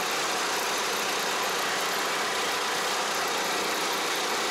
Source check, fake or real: real